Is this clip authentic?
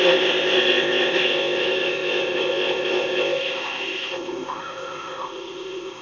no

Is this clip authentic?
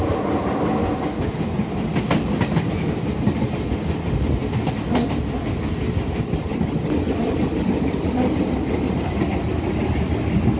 yes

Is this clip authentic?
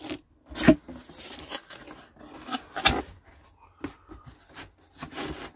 yes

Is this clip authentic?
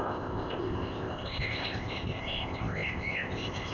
no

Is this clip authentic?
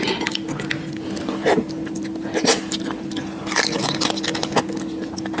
yes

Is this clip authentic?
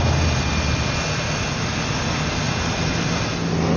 yes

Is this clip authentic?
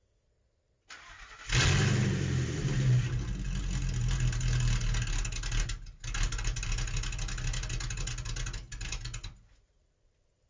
yes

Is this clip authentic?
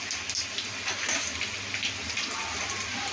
yes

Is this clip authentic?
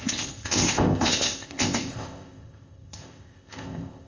no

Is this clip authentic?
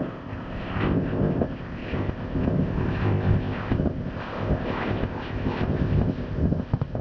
no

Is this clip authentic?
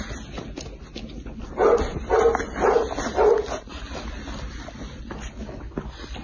yes